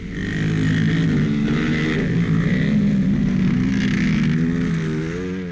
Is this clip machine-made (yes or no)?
no